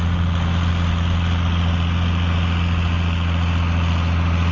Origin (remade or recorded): recorded